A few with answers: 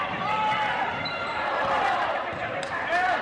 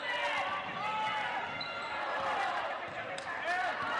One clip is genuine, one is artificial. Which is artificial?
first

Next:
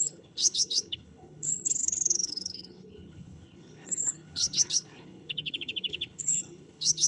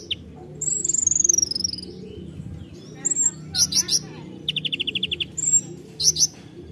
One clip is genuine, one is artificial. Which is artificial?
first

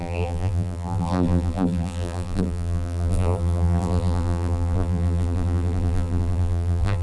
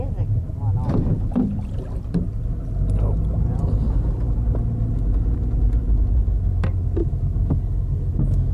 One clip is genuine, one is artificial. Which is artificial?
first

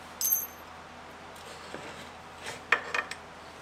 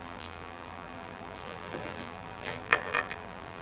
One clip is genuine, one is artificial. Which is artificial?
second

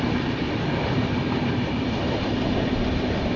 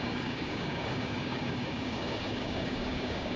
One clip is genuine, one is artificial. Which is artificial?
second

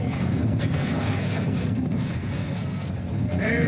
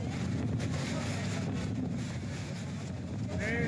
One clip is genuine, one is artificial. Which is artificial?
first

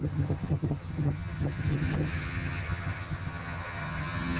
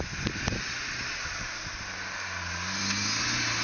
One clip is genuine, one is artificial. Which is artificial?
first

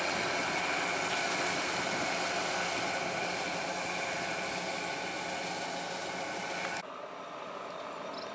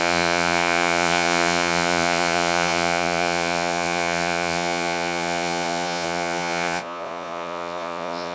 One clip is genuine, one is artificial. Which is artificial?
second